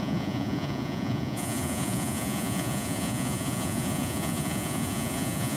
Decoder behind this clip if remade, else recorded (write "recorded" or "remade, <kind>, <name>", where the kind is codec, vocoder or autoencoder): remade, vocoder, Vocos